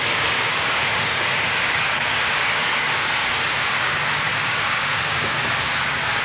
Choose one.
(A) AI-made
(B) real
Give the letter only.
A